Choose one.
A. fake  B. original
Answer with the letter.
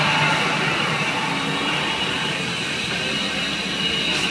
B